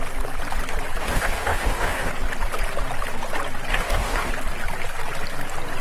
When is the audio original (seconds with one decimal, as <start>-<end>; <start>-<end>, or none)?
0.0-1.0; 2.1-3.7; 4.3-5.8